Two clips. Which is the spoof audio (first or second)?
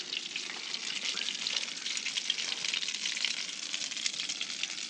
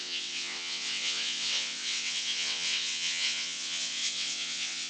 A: second